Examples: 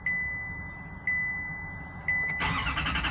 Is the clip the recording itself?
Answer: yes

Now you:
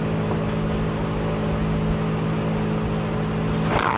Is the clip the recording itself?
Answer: yes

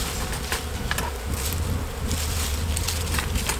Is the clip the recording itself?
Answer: yes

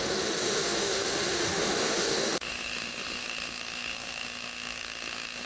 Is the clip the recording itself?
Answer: no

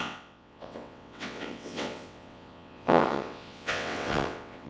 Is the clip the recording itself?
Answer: no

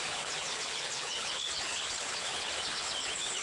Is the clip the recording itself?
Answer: no